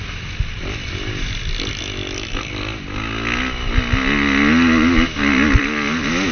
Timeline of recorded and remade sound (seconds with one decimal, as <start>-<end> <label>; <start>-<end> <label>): 0.0-6.3 recorded